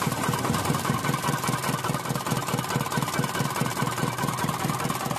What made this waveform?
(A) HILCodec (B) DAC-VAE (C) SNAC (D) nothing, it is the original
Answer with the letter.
D